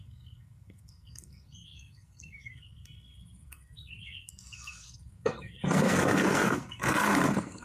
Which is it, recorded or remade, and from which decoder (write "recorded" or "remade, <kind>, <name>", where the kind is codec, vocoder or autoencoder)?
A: remade, codec, SNAC